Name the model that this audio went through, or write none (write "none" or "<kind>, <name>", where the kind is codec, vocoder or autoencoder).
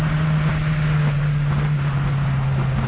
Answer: none